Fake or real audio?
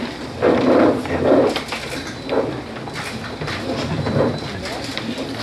real